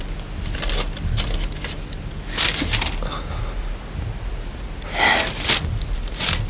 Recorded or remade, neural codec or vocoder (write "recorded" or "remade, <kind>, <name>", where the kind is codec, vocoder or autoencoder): recorded